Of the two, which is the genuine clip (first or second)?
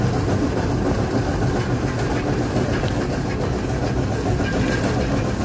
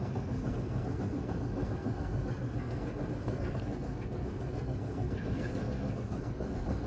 first